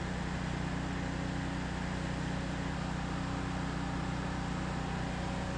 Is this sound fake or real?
real